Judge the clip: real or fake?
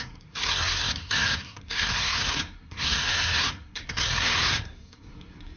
fake